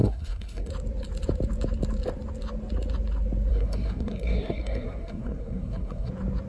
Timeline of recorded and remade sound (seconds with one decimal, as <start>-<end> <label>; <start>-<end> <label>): 0.0-0.7 remade; 0.7-3.5 recorded; 3.5-6.1 remade; 6.1-6.5 recorded